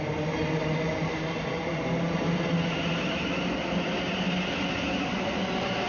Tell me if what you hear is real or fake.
real